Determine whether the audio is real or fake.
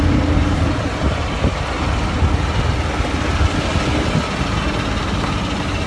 real